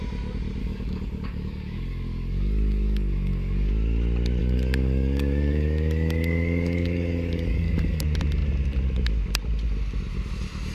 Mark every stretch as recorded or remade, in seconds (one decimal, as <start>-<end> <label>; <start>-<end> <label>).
0.0-0.6 recorded; 0.6-3.7 remade; 3.7-4.4 recorded; 4.4-8.0 remade; 8.0-10.7 recorded